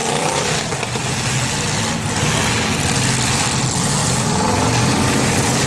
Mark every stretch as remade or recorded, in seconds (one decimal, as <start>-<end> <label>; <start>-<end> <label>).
0.0-1.8 remade; 1.8-4.0 recorded; 4.0-4.9 remade; 4.9-5.7 recorded